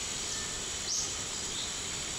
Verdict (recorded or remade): recorded